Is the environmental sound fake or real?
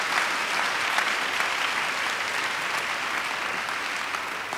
real